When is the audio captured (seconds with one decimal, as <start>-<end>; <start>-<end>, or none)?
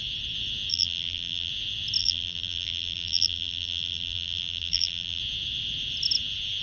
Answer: 0.0-0.7; 1.5-2.0; 5.2-6.6